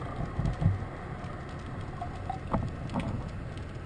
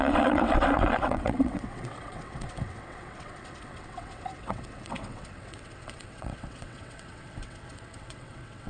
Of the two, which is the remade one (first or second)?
second